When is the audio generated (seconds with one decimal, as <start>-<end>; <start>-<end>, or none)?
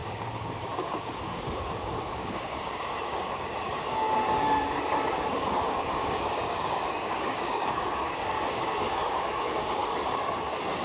0.0-10.8